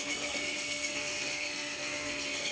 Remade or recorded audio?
remade